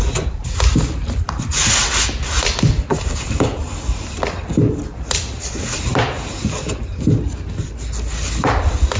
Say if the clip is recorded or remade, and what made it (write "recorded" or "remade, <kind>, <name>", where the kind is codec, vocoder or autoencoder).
recorded